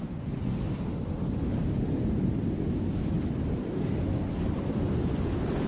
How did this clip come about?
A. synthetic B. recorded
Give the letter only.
B